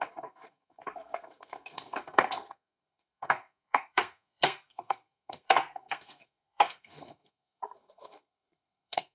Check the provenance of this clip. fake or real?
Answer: fake